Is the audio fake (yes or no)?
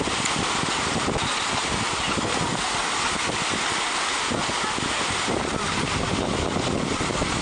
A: no